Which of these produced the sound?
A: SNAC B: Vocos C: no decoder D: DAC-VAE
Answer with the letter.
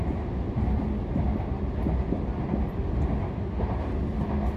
C